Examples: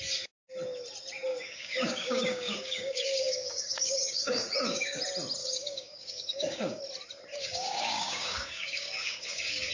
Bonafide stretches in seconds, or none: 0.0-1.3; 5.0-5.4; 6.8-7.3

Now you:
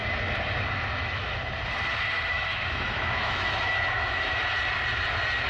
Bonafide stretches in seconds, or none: 0.0-2.3; 4.4-5.5

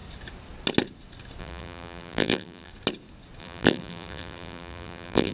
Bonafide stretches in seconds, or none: 0.0-1.4; 2.7-3.4

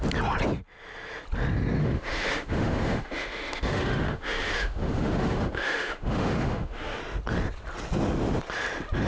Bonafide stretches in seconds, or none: 0.0-1.8; 7.0-9.1